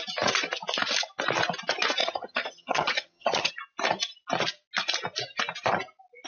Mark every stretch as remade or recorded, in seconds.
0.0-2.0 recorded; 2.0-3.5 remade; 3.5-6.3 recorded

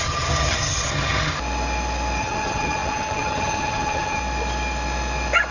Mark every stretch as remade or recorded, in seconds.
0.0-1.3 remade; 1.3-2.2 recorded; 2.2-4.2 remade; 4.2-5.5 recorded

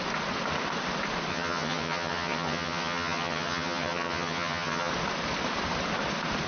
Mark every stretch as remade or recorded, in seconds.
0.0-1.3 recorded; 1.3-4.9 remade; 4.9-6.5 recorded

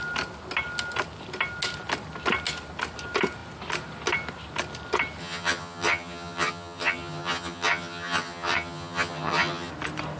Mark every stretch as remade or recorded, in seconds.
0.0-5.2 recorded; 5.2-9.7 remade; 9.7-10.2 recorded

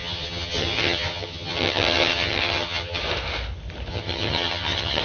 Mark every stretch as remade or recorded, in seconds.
0.0-3.0 remade; 3.0-3.9 recorded; 3.9-5.0 remade

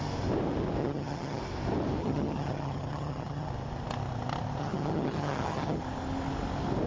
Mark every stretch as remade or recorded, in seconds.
0.0-0.8 recorded; 0.8-1.4 remade; 1.4-2.0 recorded; 2.0-3.5 remade; 3.5-4.6 recorded; 4.6-5.8 remade; 5.8-6.9 recorded